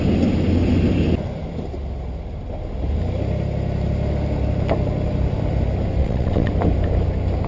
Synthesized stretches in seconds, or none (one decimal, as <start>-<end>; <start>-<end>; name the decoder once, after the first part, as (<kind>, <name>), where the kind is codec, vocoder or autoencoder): 6.0-6.5 (vocoder, WaveNeXt)